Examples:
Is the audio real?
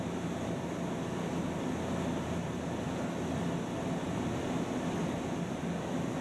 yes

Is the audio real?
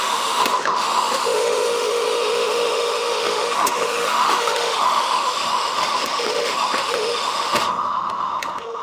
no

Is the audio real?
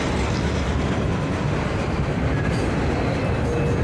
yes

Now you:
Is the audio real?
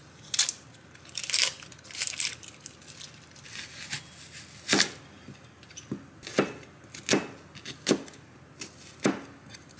yes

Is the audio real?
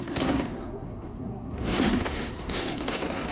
no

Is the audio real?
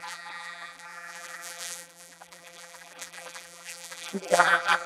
no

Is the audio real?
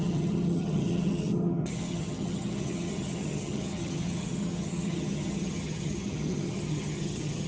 no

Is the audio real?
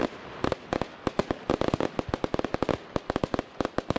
yes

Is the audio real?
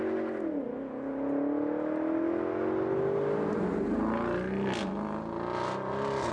yes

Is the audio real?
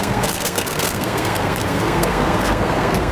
no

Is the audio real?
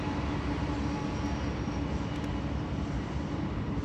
yes